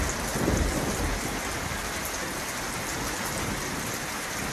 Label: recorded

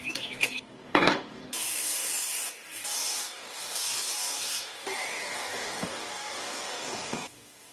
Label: remade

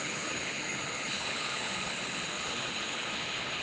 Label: remade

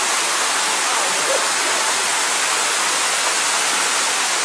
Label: recorded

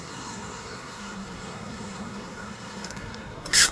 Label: remade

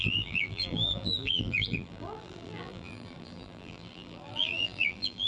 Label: remade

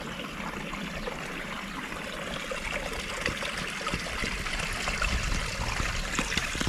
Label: recorded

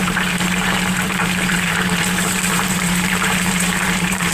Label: remade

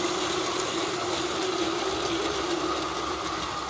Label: recorded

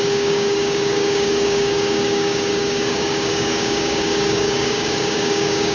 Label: remade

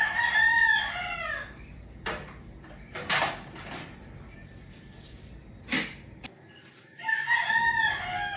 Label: recorded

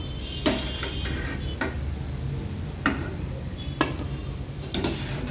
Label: recorded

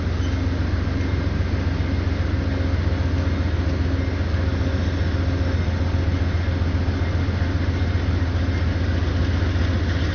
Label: recorded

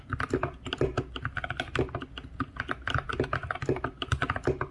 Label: recorded